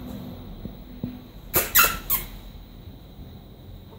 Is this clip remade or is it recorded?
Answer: recorded